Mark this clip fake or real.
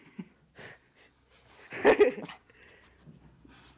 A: real